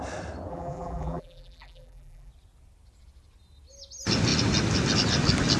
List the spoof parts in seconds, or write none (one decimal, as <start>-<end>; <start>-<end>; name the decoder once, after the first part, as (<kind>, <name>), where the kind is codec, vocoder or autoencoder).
0.5-2.3 (vocoder, BigVGAN v2)